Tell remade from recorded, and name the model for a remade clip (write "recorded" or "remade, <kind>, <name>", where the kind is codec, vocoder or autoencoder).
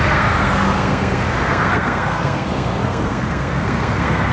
remade, codec, SNAC